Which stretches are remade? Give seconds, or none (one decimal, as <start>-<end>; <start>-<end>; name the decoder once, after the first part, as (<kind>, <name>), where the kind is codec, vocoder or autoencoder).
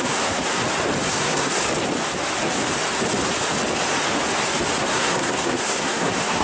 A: 0.0-0.6 (codec, SNAC); 1.1-1.6; 4.8-6.4